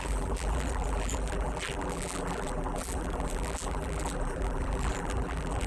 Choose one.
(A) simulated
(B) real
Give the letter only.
A